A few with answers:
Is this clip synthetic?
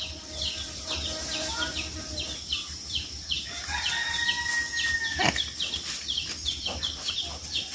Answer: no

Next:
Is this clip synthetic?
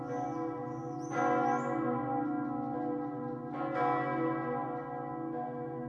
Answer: no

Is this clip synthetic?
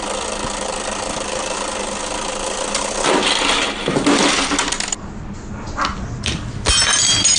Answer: no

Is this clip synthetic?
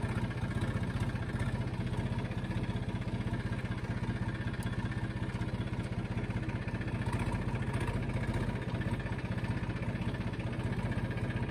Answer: no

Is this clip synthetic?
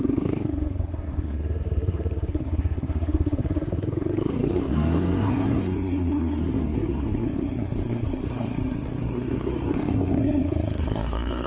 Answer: yes